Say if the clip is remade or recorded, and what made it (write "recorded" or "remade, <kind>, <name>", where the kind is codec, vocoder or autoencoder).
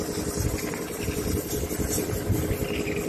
recorded